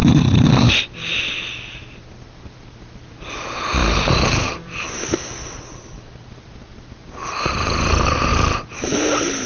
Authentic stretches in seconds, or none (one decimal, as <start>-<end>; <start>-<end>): 0.8-3.8; 5.0-8.3; 9.1-9.5